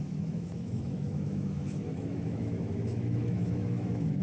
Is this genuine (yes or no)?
no